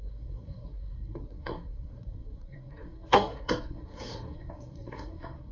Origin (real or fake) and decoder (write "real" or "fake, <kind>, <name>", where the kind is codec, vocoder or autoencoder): fake, codec, SNAC